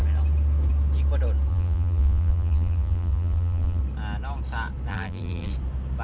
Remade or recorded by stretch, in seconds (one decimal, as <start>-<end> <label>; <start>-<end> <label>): 0.0-1.5 recorded; 1.5-3.8 remade; 3.8-4.9 recorded; 4.9-5.5 remade; 5.5-6.0 recorded